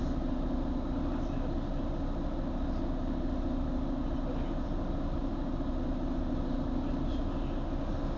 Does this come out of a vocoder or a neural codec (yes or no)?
no